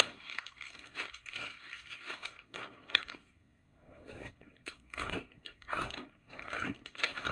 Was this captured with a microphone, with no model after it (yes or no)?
no